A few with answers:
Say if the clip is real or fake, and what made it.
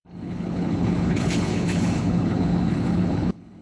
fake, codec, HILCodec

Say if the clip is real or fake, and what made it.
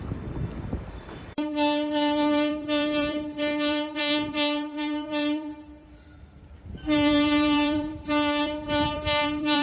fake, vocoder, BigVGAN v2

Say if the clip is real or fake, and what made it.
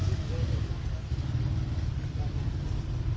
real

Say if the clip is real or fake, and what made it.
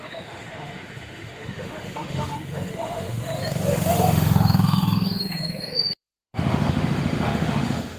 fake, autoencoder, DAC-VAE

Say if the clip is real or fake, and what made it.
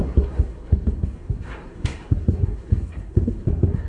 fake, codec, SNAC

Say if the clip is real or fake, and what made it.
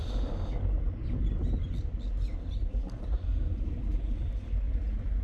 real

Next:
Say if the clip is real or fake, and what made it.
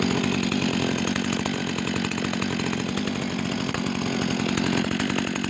real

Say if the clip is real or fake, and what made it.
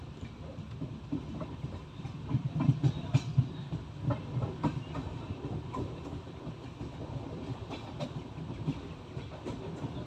fake, vocoder, BigVGAN v2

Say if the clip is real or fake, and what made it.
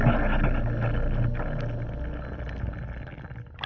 real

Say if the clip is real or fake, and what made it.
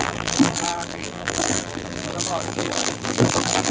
fake, vocoder, BigVGAN v2